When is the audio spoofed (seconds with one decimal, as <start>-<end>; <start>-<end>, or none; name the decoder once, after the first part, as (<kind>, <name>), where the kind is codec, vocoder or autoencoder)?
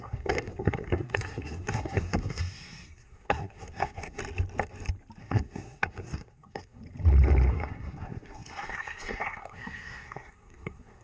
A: 0.0-4.2 (codec, SNAC); 5.2-6.8; 7.5-11.0